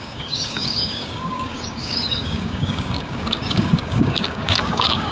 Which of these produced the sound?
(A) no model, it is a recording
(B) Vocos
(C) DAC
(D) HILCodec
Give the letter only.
C